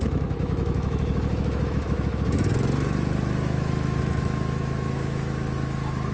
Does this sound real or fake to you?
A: fake